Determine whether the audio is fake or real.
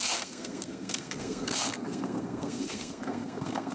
fake